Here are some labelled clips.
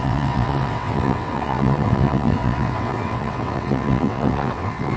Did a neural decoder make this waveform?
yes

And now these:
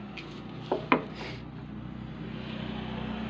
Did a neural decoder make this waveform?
no